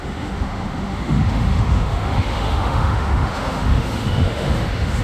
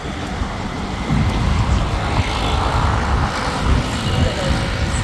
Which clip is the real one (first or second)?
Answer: second